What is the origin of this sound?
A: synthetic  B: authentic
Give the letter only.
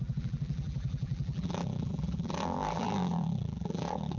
A